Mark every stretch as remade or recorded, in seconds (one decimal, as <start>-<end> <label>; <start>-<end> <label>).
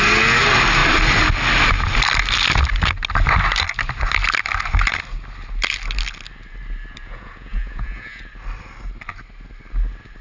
0.0-7.0 recorded; 7.0-8.2 remade; 8.2-10.2 recorded